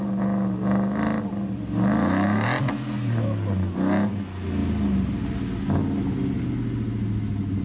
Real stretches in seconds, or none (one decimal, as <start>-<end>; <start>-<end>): 0.0-7.6